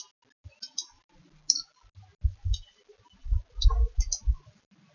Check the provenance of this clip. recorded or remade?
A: recorded